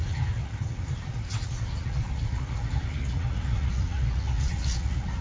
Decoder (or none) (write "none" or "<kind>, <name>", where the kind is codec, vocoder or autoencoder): vocoder, Vocos